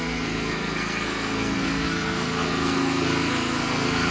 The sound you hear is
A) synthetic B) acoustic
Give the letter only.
A